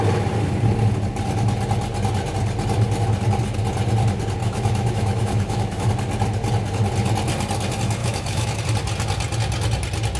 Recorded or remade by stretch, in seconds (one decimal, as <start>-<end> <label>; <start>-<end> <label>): 0.0-4.4 recorded; 4.4-5.9 remade; 5.9-8.0 recorded; 8.0-8.6 remade; 8.6-10.2 recorded